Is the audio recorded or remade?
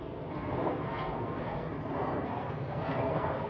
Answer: remade